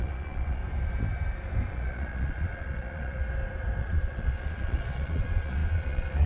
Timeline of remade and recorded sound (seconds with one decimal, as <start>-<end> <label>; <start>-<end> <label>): 0.0-0.6 remade; 0.6-1.7 recorded; 1.7-3.2 remade; 3.2-3.8 recorded; 3.8-6.3 remade